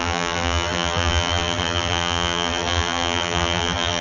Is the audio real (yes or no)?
no